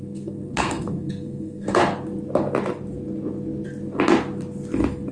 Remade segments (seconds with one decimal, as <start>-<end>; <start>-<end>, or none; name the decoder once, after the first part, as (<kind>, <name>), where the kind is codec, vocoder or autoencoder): 0.0-1.8 (codec, SNAC)